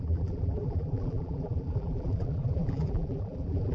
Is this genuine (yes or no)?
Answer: no